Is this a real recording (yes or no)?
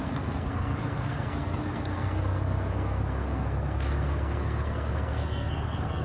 no